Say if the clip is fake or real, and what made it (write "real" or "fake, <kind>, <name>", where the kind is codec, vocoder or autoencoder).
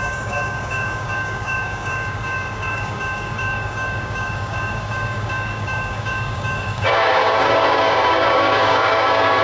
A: fake, codec, DAC